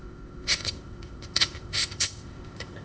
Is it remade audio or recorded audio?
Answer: remade